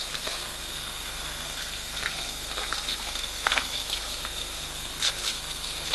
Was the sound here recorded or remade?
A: remade